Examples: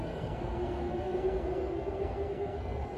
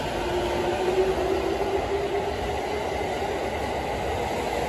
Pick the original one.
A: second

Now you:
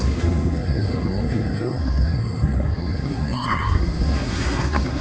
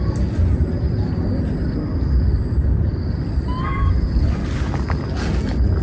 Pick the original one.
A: second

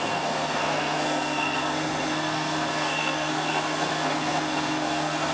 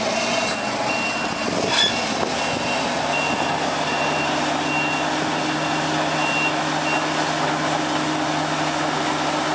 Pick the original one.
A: second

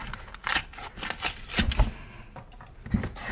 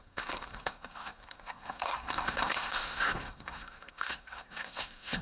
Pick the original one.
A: first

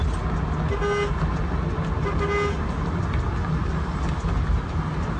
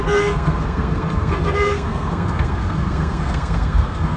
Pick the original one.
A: first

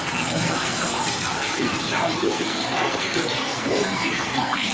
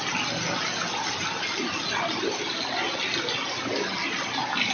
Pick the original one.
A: second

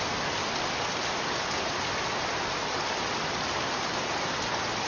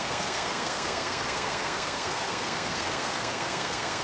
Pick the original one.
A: first